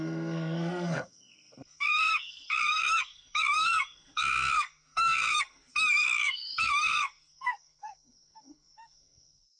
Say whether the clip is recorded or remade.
remade